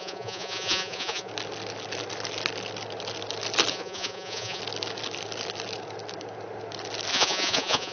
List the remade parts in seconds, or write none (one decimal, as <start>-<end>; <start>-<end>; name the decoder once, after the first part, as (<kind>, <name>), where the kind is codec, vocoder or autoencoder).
0.0-1.3 (vocoder, Vocos); 3.7-4.6; 7.1-7.9

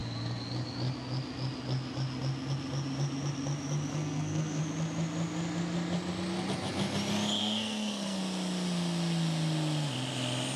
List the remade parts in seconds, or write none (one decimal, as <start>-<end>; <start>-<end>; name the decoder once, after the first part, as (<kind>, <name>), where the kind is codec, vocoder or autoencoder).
3.9-4.6 (codec, SNAC); 7.4-8.2

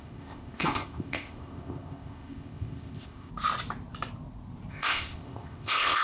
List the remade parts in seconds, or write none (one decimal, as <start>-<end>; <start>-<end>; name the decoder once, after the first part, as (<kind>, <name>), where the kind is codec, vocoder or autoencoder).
0.0-3.3 (codec, ZipCodec); 4.7-6.0